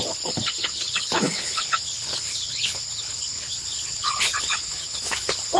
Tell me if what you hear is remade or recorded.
remade